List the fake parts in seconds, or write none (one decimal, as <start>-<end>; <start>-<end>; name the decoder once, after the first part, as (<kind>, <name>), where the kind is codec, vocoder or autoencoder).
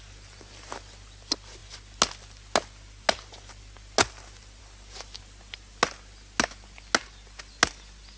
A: none